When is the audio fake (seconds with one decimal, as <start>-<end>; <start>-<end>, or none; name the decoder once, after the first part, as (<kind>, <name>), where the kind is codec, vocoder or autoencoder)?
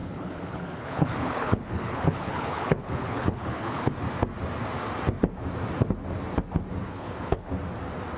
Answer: 0.0-3.9 (codec, HILCodec); 6.8-7.5